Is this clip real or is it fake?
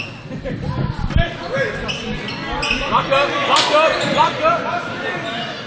real